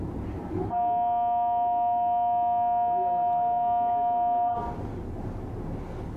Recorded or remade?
recorded